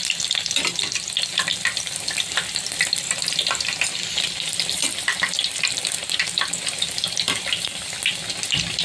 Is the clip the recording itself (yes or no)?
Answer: yes